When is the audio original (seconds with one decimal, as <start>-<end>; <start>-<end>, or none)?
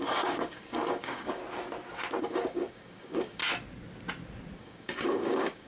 1.4-2.2; 3.4-4.6